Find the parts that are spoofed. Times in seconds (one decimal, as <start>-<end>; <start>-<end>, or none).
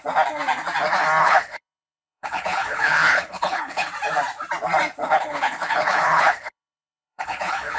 1.2-3.9; 5.0-7.8